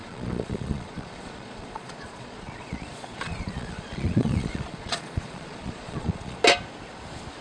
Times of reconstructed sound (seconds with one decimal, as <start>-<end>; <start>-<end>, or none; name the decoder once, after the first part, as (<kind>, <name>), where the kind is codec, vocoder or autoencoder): 0.0-6.4 (vocoder, Vocos)